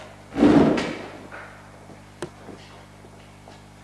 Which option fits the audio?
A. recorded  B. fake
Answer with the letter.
A